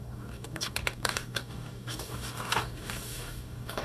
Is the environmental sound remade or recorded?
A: remade